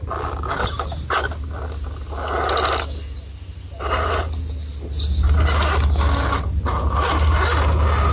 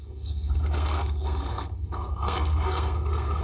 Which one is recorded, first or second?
first